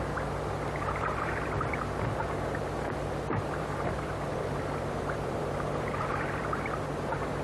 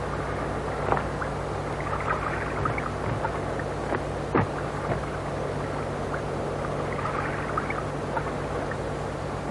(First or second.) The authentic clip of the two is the second